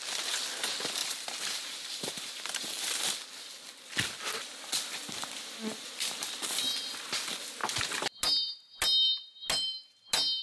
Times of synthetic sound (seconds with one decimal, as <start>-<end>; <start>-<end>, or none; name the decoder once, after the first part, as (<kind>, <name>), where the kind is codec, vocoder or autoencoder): 1.0-2.8 (vocoder, BigVGAN v2)